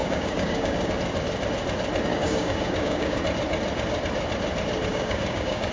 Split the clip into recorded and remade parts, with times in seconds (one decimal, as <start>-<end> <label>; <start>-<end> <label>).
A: 0.0-0.9 remade; 0.9-2.1 recorded; 2.1-3.2 remade; 3.2-4.9 recorded; 4.9-5.7 remade